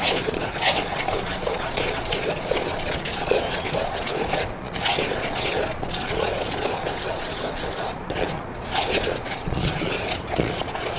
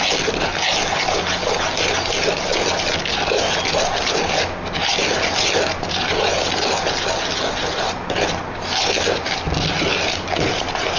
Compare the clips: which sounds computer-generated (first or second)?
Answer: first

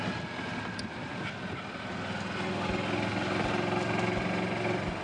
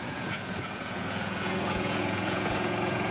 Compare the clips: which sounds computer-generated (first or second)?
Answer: second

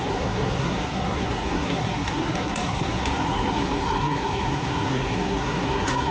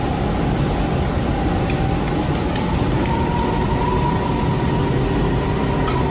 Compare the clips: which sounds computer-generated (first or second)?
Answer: first